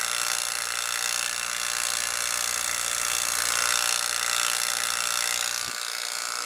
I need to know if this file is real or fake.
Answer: real